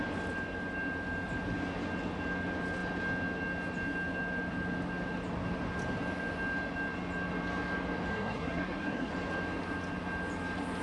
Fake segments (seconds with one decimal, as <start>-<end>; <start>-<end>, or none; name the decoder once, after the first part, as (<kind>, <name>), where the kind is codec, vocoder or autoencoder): 8.1-9.1 (codec, SNAC)